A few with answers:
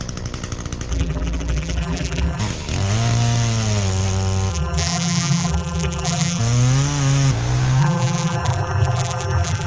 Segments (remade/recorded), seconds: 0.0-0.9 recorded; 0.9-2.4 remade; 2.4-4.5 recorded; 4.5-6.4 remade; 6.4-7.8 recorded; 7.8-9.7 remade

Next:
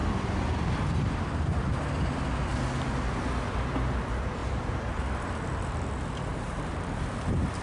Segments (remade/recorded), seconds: 0.0-6.3 recorded; 6.3-7.6 remade

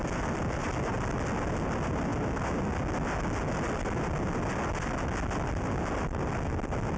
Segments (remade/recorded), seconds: 0.0-7.0 recorded

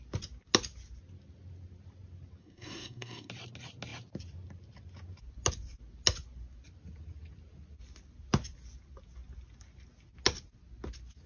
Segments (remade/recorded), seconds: 0.0-2.4 recorded; 2.4-3.3 remade; 3.3-11.3 recorded

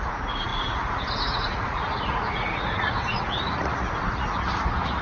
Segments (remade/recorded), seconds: 0.0-5.0 remade

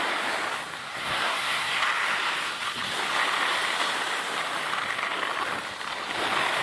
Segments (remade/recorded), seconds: 0.0-0.8 recorded; 0.8-1.8 remade; 1.8-6.6 recorded

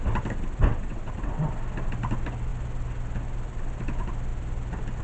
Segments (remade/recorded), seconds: 0.0-0.7 recorded; 0.7-1.5 remade; 1.5-5.0 recorded

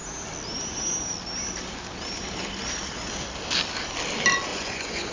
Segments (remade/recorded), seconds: 0.0-4.5 recorded; 4.5-5.1 remade